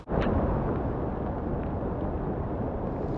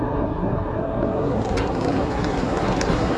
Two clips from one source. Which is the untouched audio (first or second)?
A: first